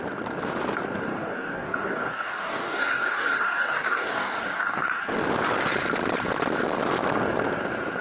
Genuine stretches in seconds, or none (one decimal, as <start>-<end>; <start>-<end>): 0.0-1.1; 5.0-8.0